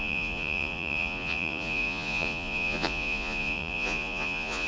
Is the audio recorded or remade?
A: remade